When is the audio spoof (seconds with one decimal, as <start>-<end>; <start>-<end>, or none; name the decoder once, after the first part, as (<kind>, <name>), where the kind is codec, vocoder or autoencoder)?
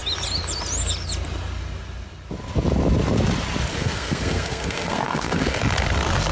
3.7-5.6 (codec, SNAC)